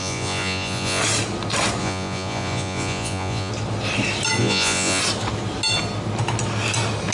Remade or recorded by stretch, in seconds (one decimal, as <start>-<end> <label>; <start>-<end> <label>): 0.0-1.0 remade; 1.0-1.8 recorded; 1.8-3.5 remade; 3.5-4.4 recorded; 4.4-5.0 remade; 5.0-7.1 recorded